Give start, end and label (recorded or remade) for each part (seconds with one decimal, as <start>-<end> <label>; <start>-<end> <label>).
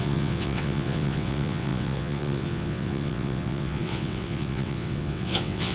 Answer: 0.0-5.7 remade